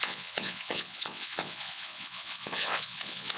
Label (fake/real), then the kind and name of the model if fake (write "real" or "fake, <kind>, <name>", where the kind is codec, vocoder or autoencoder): fake, vocoder, Vocos